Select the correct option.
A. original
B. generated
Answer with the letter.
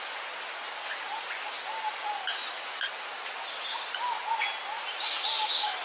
A